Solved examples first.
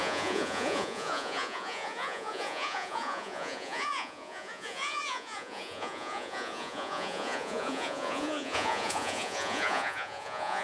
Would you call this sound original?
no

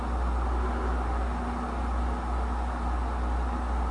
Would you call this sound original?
yes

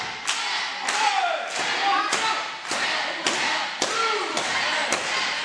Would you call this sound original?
yes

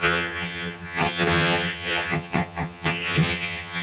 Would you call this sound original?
no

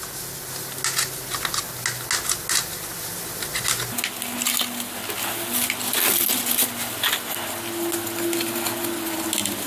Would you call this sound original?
yes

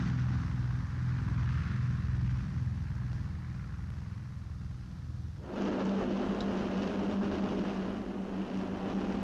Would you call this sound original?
yes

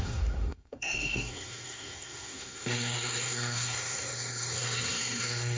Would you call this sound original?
no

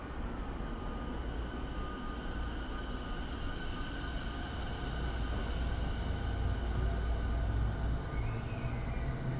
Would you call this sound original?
yes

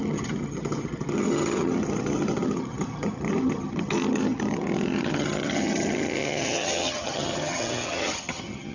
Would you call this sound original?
no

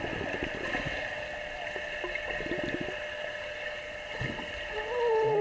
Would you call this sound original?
yes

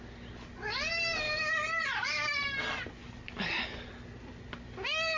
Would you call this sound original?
yes